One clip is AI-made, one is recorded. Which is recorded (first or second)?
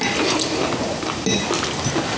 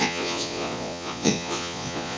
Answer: first